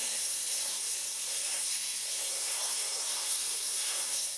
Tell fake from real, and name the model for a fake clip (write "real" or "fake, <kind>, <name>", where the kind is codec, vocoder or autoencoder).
fake, codec, SNAC